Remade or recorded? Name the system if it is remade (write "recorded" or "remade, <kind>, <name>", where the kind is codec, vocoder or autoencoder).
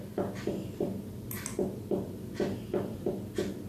recorded